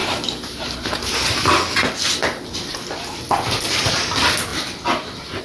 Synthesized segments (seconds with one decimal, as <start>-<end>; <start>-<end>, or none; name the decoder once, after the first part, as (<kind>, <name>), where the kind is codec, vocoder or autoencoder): none